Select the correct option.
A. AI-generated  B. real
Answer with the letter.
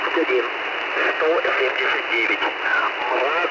B